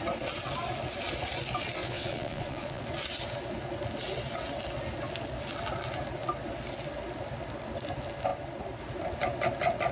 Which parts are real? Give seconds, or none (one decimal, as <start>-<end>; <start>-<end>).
0.0-1.8; 2.8-9.9